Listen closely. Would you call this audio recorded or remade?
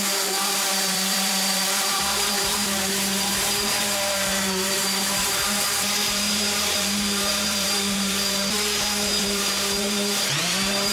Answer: remade